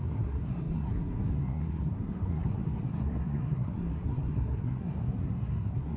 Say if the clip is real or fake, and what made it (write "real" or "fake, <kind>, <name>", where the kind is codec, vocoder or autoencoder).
fake, codec, SNAC